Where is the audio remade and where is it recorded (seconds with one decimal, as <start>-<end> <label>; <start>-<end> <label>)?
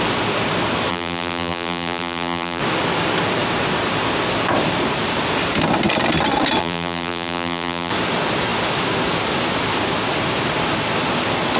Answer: 0.0-0.9 recorded; 0.9-2.6 remade; 2.6-6.6 recorded; 6.6-7.9 remade; 7.9-11.6 recorded